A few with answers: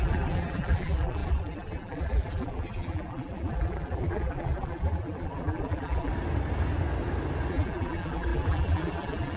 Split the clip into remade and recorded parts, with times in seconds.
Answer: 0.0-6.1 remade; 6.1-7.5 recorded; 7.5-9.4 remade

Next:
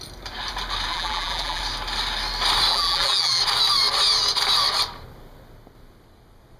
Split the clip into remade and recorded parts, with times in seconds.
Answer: 0.0-0.9 recorded; 0.9-1.6 remade; 1.6-2.7 recorded; 2.7-3.4 remade; 3.4-6.6 recorded

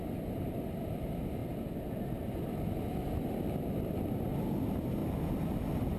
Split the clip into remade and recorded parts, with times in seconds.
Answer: 0.0-6.0 recorded

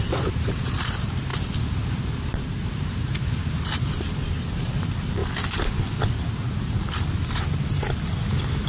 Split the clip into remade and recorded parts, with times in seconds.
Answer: 0.0-1.3 remade; 1.3-1.9 recorded; 1.9-5.2 remade; 5.2-6.2 recorded; 6.2-8.7 remade

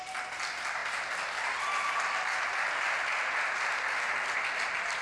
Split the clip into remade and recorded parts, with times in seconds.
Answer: 0.0-0.8 remade; 0.8-3.8 recorded; 3.8-5.0 remade

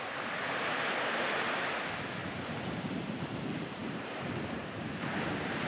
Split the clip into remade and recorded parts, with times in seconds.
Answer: 0.0-2.2 recorded; 2.2-3.0 remade; 3.0-3.8 recorded; 3.8-5.2 remade; 5.2-5.7 recorded

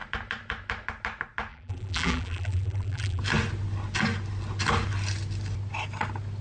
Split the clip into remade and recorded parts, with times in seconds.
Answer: 0.0-1.5 recorded; 1.5-3.2 remade; 3.2-6.4 recorded